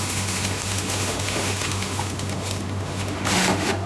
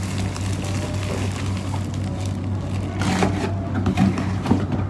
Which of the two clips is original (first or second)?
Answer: second